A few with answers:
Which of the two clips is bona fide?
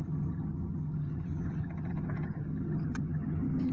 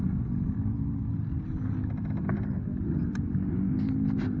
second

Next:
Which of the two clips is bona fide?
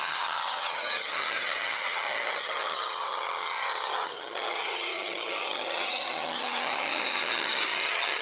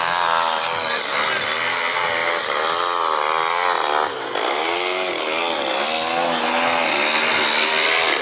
second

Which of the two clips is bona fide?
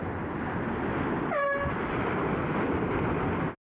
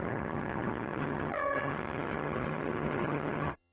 first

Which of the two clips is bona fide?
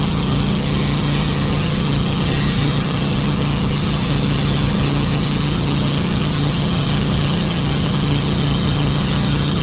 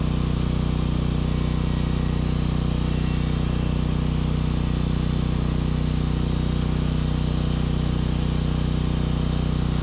second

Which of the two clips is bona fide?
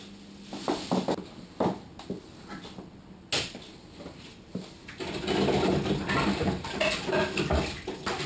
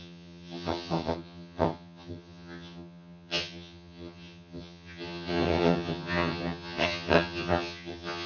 first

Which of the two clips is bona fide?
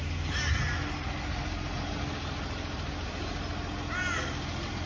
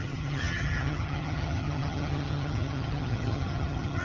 first